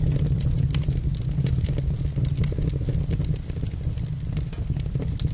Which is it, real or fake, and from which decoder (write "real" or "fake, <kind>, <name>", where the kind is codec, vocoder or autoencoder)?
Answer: real